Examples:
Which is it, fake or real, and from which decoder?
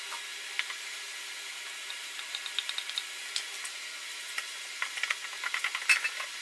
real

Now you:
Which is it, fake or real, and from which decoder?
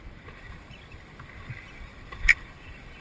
fake, vocoder, BigVGAN v2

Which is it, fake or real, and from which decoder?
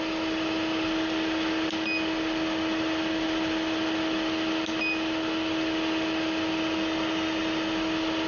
real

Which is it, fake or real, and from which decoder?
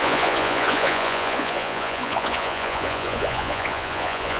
fake, vocoder, Vocos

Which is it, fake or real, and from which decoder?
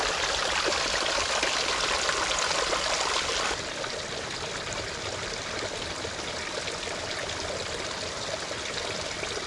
real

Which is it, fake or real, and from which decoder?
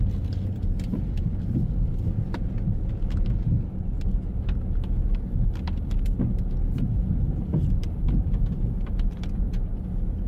real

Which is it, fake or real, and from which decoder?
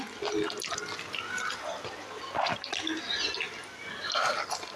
real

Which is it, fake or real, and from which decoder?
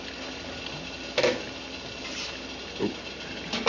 real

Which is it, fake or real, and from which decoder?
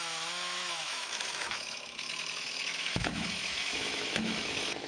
fake, autoencoder, DAC-VAE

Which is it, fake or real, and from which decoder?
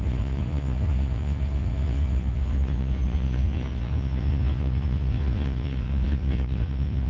fake, vocoder, Vocos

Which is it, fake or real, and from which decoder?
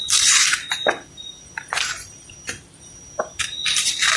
fake, vocoder, BigVGAN v2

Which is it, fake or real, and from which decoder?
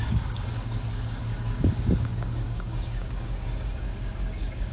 fake, codec, DAC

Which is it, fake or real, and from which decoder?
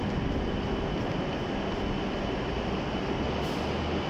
real